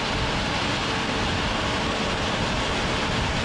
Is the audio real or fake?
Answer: real